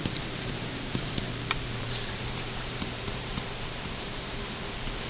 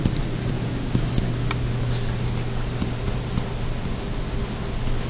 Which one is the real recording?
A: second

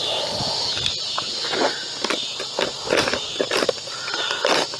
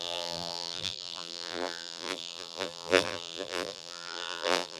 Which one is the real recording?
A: first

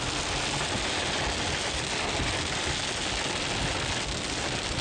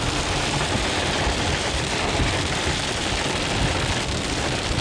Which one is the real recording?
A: first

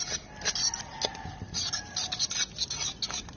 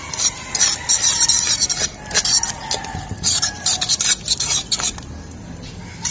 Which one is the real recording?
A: first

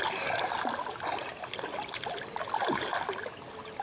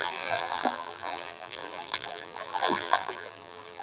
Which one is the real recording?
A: first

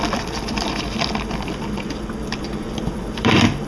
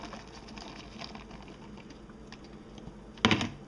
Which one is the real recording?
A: second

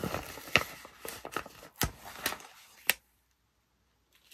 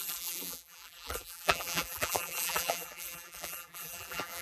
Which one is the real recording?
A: first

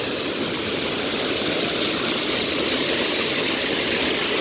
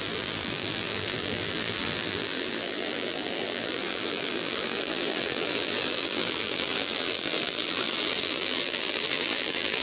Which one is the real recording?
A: first